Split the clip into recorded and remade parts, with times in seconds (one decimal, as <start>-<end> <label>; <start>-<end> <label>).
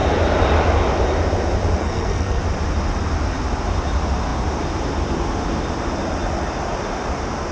0.0-1.8 recorded; 1.8-2.4 remade; 2.4-7.5 recorded